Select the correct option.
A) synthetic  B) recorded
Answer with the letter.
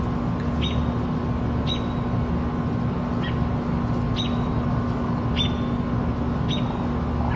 B